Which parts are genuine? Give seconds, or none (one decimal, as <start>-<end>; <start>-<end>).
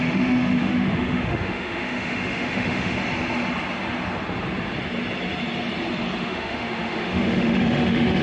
3.0-6.2